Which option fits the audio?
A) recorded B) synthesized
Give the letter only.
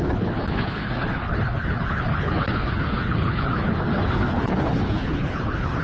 B